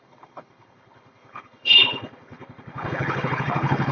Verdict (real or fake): fake